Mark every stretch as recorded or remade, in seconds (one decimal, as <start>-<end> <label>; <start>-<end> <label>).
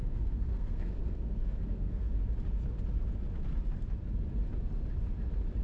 0.0-2.1 remade; 2.1-5.6 recorded